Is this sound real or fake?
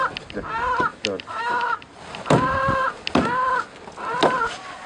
real